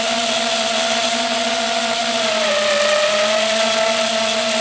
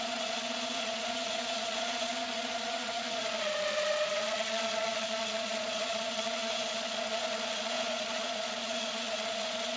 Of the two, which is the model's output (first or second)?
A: second